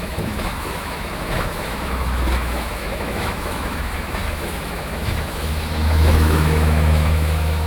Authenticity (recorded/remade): remade